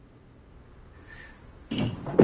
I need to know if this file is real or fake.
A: real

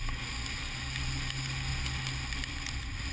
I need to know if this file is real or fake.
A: real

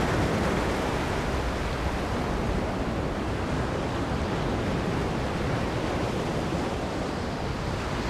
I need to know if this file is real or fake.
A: real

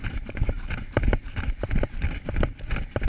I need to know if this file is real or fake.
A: real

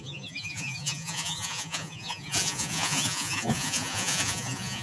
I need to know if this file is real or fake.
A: fake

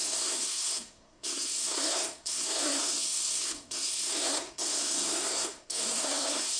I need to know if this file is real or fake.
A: fake